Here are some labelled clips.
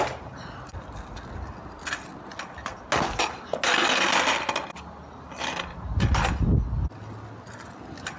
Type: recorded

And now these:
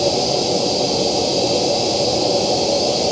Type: recorded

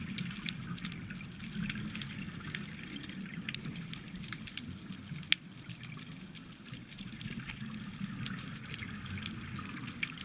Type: recorded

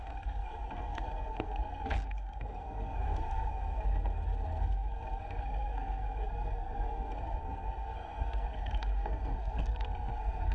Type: remade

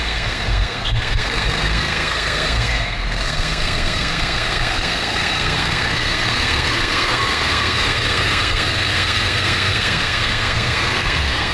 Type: remade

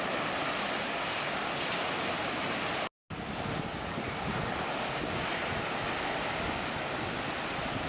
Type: recorded